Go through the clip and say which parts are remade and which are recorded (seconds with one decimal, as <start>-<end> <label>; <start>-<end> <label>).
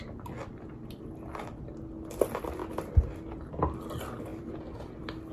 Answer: 0.0-4.3 recorded; 4.3-4.8 remade; 4.8-5.3 recorded